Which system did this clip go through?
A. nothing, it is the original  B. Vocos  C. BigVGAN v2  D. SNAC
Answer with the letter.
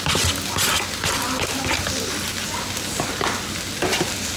A